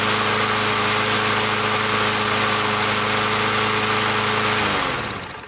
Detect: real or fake real